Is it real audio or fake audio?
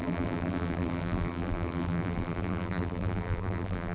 fake